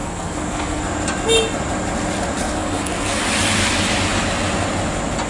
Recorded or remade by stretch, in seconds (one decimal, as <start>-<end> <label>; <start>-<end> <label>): 0.0-0.8 remade; 0.8-2.4 recorded; 2.4-3.2 remade; 3.2-5.3 recorded